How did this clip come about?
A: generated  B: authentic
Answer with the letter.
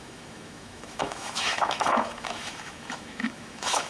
A